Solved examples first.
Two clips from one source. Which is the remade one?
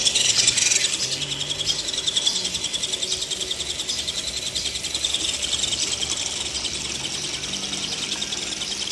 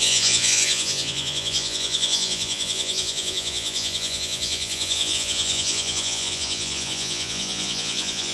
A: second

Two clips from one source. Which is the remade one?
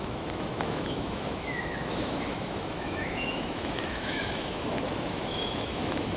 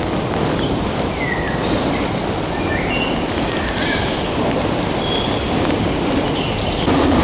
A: first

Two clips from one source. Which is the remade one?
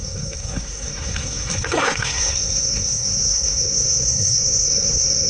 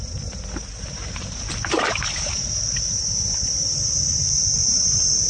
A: first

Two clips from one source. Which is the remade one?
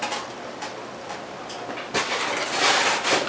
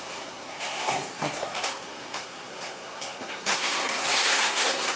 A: second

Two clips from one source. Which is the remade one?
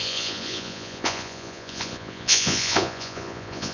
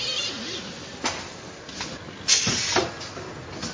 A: first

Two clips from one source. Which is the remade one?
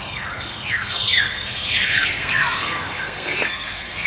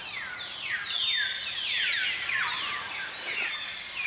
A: first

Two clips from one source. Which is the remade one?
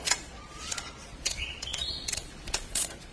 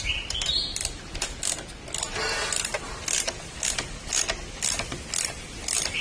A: first